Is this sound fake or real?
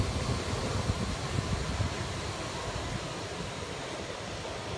real